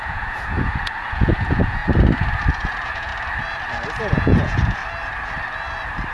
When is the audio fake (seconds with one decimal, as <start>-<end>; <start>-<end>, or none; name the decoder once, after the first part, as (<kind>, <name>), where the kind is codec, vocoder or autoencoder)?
0.0-1.8 (vocoder, Vocos); 2.5-3.1; 4.0-4.8